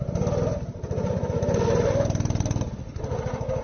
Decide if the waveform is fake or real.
real